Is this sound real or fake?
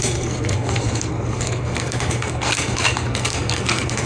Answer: fake